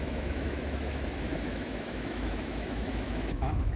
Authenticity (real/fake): fake